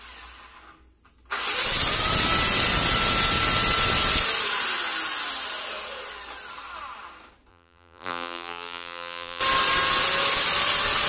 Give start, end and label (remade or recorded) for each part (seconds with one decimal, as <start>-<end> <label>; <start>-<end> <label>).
0.0-7.5 recorded; 7.5-9.4 remade; 9.4-11.1 recorded